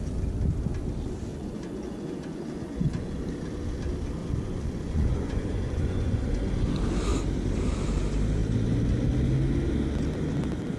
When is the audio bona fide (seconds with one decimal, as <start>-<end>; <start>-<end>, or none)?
0.0-1.3; 3.2-4.2; 6.6-10.8